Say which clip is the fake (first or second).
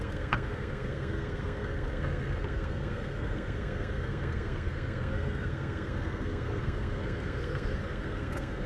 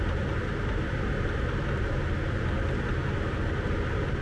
first